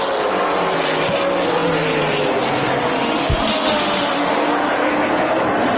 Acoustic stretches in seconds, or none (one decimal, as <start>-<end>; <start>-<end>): 0.0-2.8; 4.9-5.8